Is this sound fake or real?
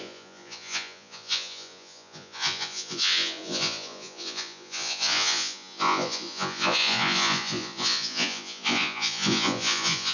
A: fake